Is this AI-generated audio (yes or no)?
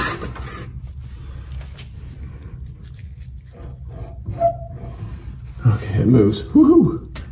no